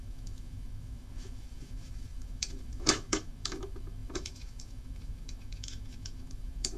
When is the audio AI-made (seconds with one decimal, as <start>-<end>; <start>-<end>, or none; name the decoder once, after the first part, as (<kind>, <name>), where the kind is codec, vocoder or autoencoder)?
0.0-6.8 (autoencoder, DAC-VAE)